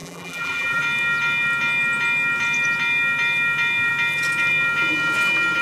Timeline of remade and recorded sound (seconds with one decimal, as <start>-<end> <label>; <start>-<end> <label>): 0.0-0.8 remade; 0.8-5.6 recorded